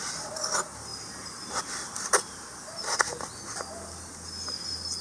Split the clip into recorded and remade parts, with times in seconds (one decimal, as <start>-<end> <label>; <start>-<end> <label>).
0.0-5.0 recorded